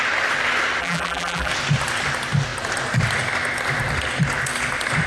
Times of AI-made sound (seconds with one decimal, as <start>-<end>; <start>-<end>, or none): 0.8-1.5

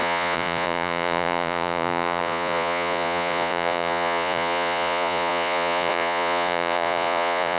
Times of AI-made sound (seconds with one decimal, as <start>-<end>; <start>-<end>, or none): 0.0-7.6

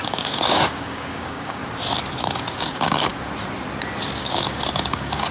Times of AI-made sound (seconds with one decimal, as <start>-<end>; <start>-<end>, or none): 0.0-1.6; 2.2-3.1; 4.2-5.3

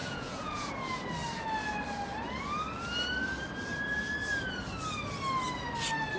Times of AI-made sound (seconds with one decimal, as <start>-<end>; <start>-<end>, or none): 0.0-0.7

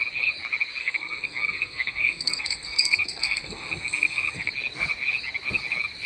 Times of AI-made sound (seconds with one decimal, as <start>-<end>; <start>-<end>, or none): 0.8-4.5

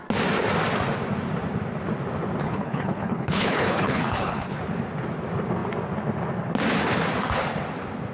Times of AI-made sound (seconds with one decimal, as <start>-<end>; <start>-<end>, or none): 2.4-4.6

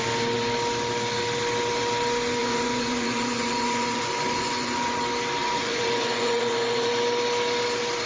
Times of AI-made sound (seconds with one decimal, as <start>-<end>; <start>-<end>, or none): 2.4-5.0; 5.4-6.9